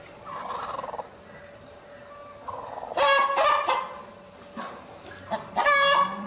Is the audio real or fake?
real